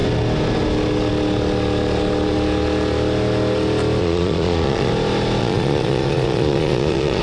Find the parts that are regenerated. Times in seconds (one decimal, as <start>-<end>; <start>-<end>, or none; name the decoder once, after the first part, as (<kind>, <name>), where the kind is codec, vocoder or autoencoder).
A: 4.0-4.9 (vocoder, Vocos); 5.4-7.2